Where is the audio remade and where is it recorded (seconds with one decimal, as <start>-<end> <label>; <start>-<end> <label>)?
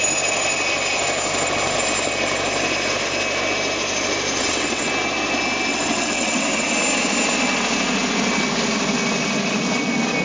0.0-4.4 recorded; 4.4-4.9 remade; 4.9-5.7 recorded; 5.7-6.7 remade; 6.7-10.2 recorded